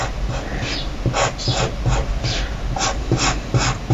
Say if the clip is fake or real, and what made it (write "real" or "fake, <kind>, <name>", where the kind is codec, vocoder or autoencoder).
real